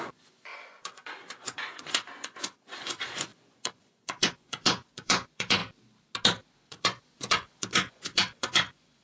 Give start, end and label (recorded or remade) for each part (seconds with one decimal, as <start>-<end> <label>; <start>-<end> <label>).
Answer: 0.0-5.6 remade; 5.6-6.5 recorded; 6.5-9.0 remade